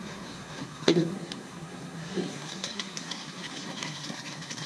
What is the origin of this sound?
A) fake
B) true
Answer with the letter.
A